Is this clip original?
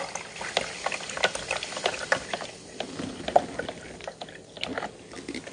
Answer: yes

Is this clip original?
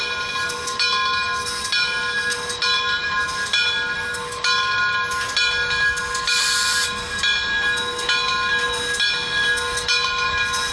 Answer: yes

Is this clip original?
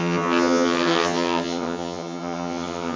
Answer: no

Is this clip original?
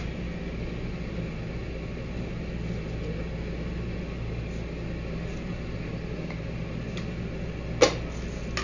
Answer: yes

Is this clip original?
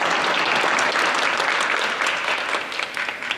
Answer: yes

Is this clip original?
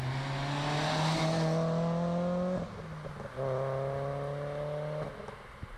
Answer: yes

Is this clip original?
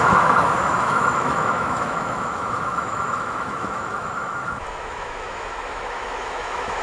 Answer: no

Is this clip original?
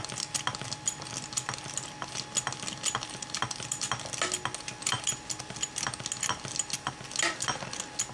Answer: yes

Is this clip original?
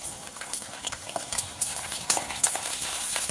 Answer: no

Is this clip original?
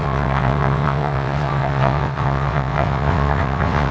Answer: no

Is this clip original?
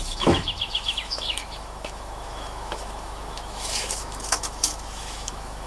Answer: no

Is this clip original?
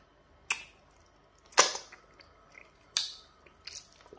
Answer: yes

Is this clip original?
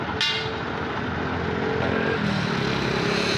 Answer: yes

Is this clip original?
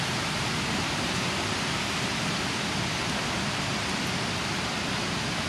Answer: yes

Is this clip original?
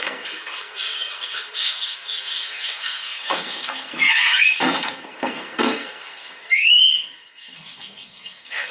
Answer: no